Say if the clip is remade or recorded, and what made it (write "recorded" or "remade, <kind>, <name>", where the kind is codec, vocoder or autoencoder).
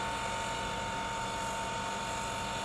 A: recorded